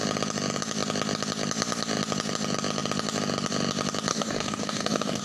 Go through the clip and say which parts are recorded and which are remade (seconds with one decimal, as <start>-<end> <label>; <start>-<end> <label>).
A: 0.0-4.1 recorded; 4.1-5.2 remade